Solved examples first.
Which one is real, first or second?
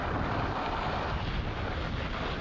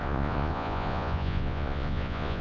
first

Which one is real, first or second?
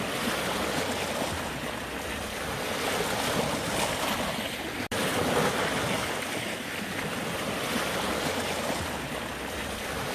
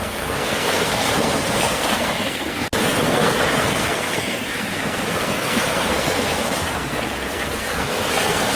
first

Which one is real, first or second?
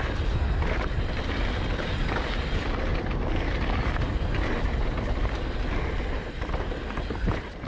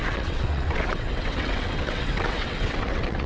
first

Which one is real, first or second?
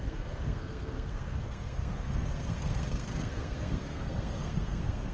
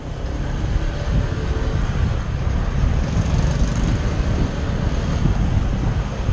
second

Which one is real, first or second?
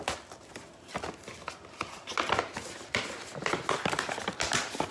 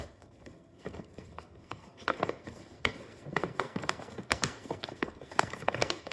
first